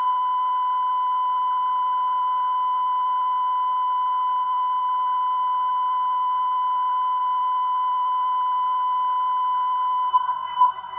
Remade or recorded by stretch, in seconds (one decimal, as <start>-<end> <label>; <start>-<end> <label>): 0.0-10.1 recorded; 10.1-11.0 remade